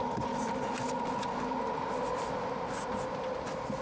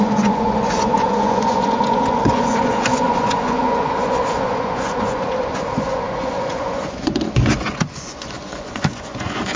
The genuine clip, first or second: first